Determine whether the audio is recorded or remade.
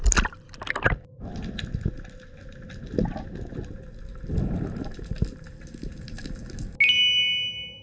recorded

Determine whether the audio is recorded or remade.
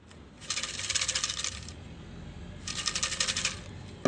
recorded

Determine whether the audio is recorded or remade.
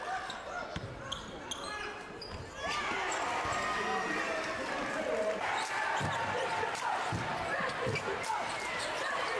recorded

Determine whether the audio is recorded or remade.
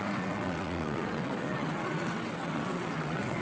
remade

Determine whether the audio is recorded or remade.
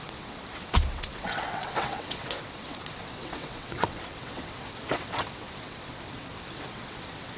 remade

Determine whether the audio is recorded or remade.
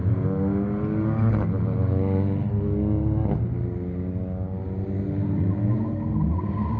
recorded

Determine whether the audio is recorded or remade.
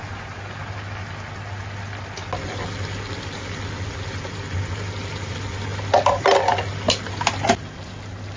recorded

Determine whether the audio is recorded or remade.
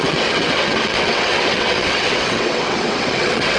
remade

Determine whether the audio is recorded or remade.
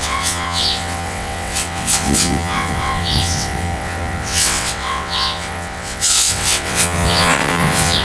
remade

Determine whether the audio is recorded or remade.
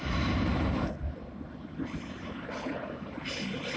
recorded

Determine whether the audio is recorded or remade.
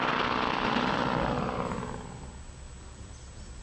recorded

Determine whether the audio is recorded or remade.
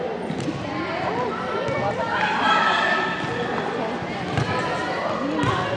recorded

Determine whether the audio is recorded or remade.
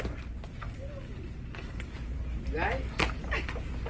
recorded